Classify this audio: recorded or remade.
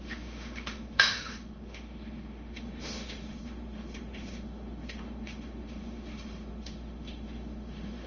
remade